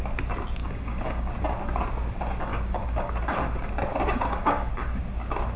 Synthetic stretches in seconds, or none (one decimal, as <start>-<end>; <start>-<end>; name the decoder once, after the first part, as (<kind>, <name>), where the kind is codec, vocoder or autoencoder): 0.6-1.3 (codec, DAC); 2.5-3.1; 3.9-4.7